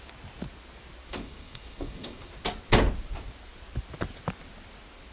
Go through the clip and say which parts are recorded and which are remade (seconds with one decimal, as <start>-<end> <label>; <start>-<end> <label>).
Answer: 0.0-1.1 recorded; 1.1-2.3 remade; 2.3-5.1 recorded